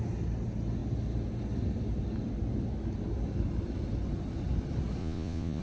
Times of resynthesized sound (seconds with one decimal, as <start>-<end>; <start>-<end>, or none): 5.0-5.6